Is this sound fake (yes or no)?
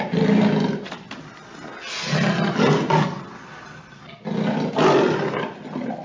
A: no